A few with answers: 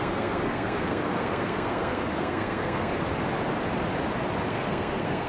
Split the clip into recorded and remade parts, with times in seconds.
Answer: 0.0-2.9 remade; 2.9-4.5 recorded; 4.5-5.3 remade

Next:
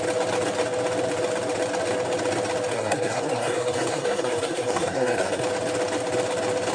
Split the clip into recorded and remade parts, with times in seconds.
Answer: 0.0-2.7 recorded; 2.7-5.4 remade; 5.4-6.7 recorded

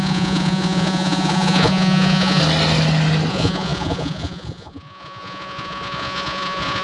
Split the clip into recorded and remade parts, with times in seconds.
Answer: 0.0-2.4 remade; 2.4-3.3 recorded; 3.3-6.8 remade

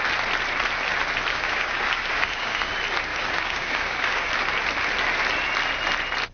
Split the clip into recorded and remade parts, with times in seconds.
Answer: 0.0-1.3 recorded; 1.3-2.7 remade; 2.7-3.1 recorded; 3.1-4.3 remade; 4.3-6.3 recorded

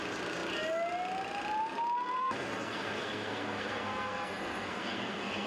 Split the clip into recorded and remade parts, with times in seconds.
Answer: 0.0-2.2 recorded; 2.2-5.5 remade

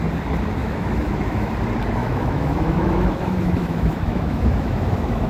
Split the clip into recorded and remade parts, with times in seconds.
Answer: 0.0-0.6 recorded; 0.6-1.5 remade; 1.5-2.0 recorded; 2.0-5.3 remade

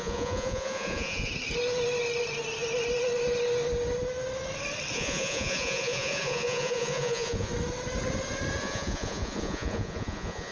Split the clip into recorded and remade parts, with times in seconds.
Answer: 0.0-1.3 remade; 1.3-4.9 recorded; 4.9-7.5 remade; 7.5-8.6 recorded; 8.6-10.5 remade

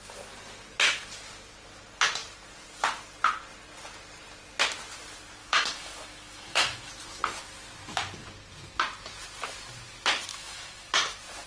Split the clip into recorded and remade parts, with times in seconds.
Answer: 0.0-5.4 recorded; 5.4-6.9 remade; 6.9-10.3 recorded; 10.3-10.9 remade; 10.9-11.5 recorded